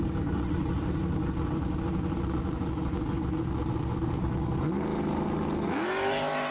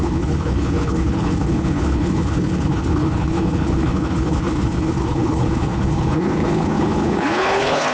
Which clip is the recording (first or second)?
first